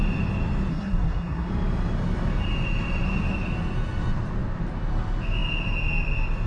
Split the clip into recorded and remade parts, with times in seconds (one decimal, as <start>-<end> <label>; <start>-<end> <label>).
0.0-0.7 recorded; 0.7-1.5 remade; 1.5-6.5 recorded